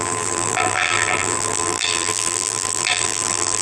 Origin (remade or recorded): remade